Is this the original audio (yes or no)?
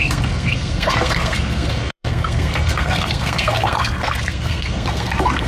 no